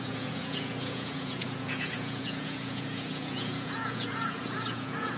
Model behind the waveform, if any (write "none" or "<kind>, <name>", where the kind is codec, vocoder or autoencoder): vocoder, Vocos